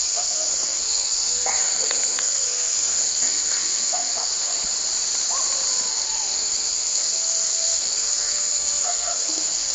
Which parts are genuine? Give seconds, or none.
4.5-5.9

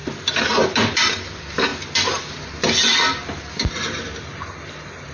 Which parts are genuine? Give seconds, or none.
0.0-5.1

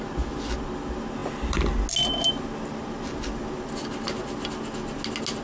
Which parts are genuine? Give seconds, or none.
0.0-5.4

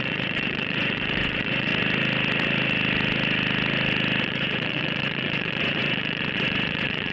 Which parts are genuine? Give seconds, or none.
1.7-4.2

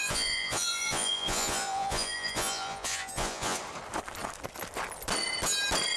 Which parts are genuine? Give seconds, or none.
3.6-6.0